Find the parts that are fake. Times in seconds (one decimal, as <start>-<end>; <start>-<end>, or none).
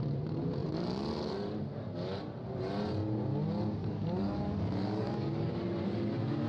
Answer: 3.8-5.6